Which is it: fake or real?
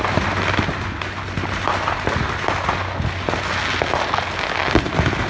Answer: real